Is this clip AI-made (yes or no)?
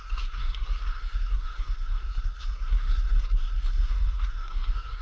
yes